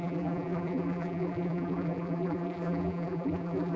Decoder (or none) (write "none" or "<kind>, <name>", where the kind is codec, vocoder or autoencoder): vocoder, BigVGAN v2